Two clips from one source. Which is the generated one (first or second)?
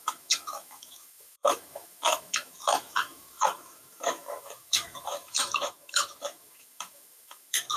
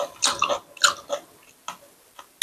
first